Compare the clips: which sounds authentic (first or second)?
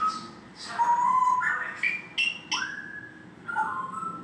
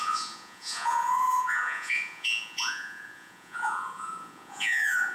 first